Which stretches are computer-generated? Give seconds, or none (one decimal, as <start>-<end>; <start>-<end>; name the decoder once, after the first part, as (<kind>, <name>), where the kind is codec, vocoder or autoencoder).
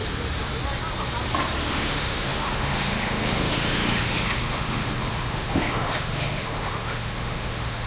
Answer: 1.7-7.9 (autoencoder, DAC-VAE)